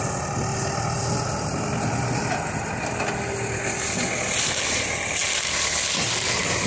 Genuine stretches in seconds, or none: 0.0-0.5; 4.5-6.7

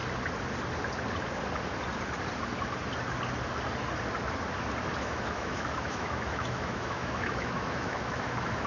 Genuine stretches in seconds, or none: 0.0-5.0

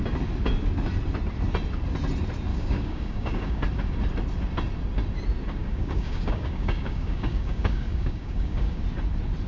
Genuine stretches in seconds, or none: 0.0-2.5; 3.6-5.6; 8.8-9.5

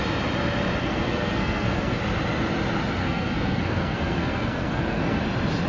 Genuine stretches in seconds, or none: 0.0-0.8; 2.0-3.0; 5.2-5.7

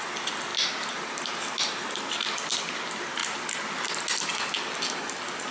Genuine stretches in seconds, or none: 0.0-5.5

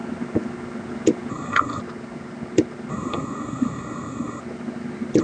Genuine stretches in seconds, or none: 0.0-1.3; 1.8-2.9; 4.4-5.2

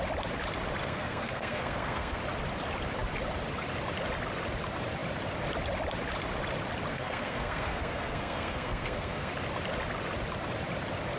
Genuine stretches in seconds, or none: 0.0-0.8; 2.2-6.9; 9.3-11.2